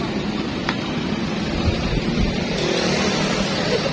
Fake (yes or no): yes